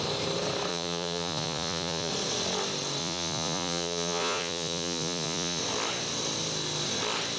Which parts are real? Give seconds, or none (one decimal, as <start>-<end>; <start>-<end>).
0.0-0.7; 2.1-3.0; 5.6-7.4